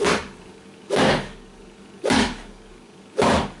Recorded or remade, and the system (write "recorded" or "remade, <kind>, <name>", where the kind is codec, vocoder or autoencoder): remade, codec, DAC